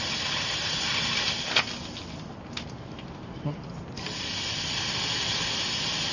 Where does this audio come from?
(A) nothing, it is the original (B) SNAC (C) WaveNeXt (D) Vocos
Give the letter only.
A